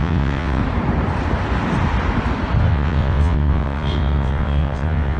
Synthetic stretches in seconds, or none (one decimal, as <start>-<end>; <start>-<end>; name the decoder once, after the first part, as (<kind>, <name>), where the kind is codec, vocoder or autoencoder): 0.0-0.6 (vocoder, WaveNeXt); 2.7-5.2